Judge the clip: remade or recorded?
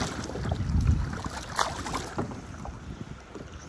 recorded